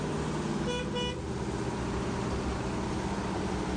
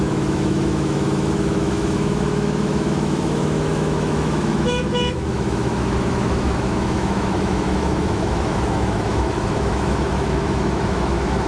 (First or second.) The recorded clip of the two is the first